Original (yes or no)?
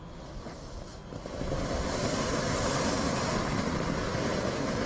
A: yes